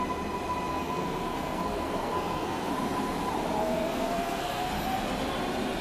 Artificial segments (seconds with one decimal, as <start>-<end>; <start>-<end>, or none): 0.7-2.7; 3.6-4.7